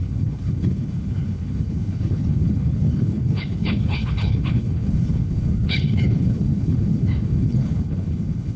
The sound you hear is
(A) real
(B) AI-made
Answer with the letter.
B